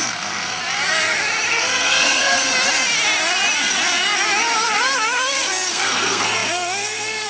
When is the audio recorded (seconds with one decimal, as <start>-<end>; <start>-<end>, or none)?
0.6-1.5; 2.5-5.7